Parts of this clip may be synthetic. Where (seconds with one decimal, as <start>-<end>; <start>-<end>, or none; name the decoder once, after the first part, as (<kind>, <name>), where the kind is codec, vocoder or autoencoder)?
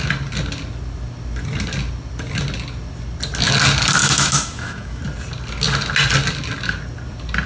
4.0-5.0 (autoencoder, DAC-VAE)